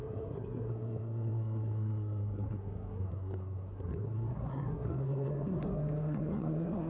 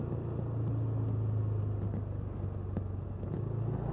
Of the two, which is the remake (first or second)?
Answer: first